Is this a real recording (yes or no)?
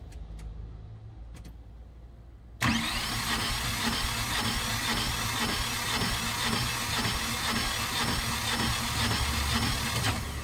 yes